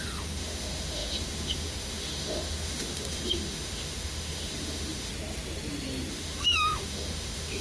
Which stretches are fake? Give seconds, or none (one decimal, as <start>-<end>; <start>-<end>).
0.0-5.1; 6.1-7.6